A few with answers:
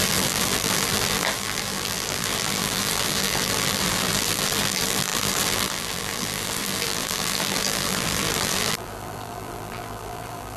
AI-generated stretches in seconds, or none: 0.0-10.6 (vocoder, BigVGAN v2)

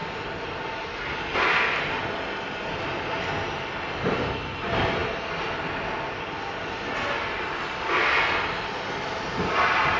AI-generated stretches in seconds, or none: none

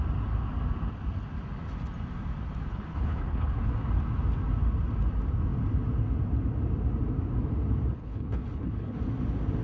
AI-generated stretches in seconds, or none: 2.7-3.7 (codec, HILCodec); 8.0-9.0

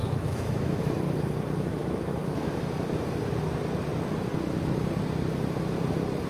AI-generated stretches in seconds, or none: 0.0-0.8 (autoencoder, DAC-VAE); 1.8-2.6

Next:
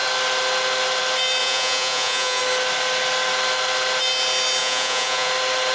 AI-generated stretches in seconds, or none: 1.4-2.4 (vocoder, Vocos); 4.6-5.3

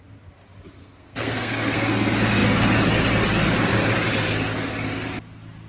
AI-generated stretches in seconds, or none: 0.8-1.9 (codec, SNAC)